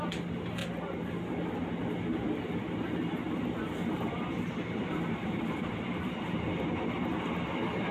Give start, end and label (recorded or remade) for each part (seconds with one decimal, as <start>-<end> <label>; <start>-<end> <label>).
0.0-3.8 recorded; 3.8-6.2 remade; 6.2-7.9 recorded